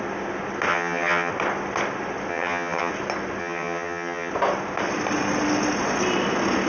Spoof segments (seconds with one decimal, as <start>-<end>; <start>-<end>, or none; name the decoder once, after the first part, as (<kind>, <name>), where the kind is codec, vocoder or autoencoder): 0.7-1.3 (vocoder, HiFi-GAN); 2.3-2.9; 3.4-4.3

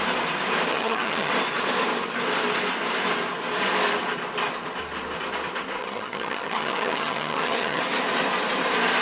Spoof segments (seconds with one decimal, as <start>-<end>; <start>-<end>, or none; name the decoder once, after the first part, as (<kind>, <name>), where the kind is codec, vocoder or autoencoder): 0.7-1.3 (vocoder, HiFi-GAN); 5.8-7.8

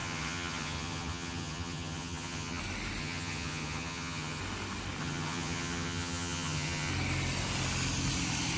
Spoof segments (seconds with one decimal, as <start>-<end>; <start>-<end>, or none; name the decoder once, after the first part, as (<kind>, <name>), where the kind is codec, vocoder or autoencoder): 0.0-2.6 (vocoder, HiFi-GAN); 3.0-4.4; 5.0-6.9

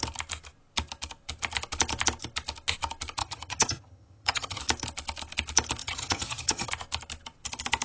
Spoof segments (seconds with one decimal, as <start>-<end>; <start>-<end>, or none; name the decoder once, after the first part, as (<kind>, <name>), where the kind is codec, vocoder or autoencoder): 3.2-4.6 (vocoder, HiFi-GAN); 5.8-6.7

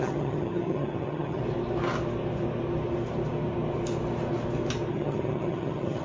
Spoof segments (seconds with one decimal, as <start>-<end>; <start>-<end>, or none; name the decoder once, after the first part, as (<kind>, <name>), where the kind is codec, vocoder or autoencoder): 0.0-1.4 (vocoder, HiFi-GAN); 4.9-6.0